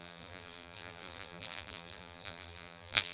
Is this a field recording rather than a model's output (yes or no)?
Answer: no